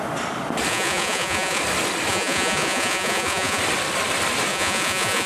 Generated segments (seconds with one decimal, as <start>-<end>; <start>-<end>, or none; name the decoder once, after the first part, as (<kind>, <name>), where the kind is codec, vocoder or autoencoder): 0.7-1.6 (vocoder, Vocos); 2.1-3.6; 4.5-5.3